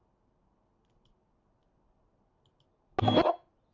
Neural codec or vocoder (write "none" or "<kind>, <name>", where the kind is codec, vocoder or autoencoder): none